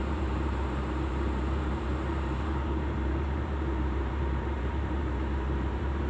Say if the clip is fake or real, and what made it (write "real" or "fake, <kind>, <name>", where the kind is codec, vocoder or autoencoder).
fake, vocoder, BigVGAN v2